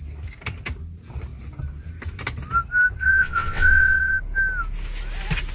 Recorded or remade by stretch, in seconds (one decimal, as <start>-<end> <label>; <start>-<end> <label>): 0.0-3.0 recorded; 3.0-4.2 remade; 4.2-5.5 recorded